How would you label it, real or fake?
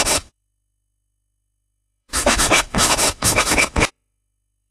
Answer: fake